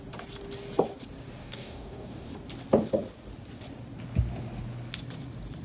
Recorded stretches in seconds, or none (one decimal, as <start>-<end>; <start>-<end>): 0.0-1.4; 2.3-5.6